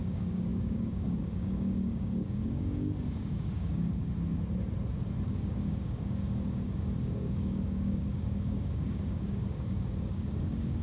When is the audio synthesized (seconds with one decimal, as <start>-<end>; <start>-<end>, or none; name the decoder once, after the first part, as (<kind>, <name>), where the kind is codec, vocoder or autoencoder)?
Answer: 0.0-4.0 (codec, DAC); 5.3-10.8